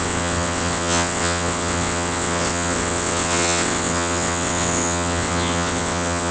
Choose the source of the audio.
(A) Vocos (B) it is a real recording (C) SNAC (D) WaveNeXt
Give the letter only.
D